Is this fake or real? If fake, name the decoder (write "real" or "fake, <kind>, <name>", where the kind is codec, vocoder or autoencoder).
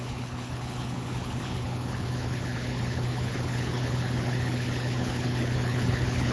fake, codec, HILCodec